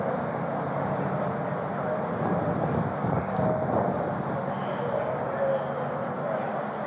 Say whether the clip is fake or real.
real